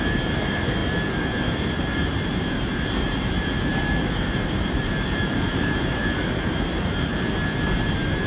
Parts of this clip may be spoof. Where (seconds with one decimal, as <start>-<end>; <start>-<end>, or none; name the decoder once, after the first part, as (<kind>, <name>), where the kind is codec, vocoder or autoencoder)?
0.0-8.3 (vocoder, BigVGAN v2)